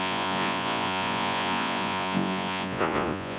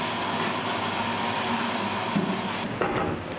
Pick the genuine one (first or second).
second